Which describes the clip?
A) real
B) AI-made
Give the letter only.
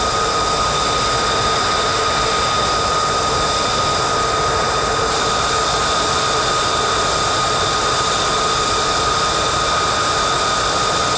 A